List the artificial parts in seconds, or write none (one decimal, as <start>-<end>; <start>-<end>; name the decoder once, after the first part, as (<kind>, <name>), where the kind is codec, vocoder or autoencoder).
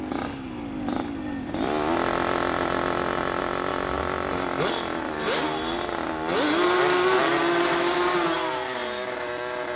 none